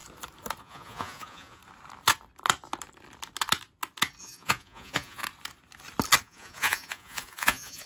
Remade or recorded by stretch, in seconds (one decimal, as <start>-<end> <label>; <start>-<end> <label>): 0.0-0.6 recorded; 0.6-1.6 remade; 1.6-4.2 recorded; 4.2-5.2 remade; 5.2-6.2 recorded; 6.2-7.9 remade